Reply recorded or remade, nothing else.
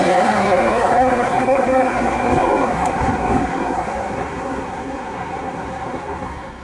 remade